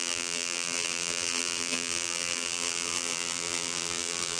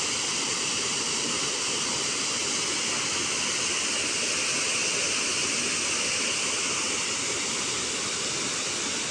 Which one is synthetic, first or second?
first